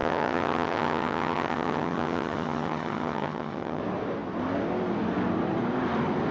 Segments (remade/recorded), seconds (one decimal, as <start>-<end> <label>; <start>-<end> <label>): 0.0-3.8 remade; 3.8-6.3 recorded